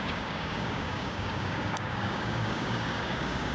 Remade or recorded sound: remade